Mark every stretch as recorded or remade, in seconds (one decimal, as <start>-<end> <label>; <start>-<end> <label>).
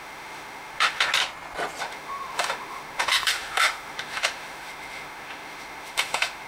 0.0-1.1 remade; 1.1-1.8 recorded; 1.8-6.5 remade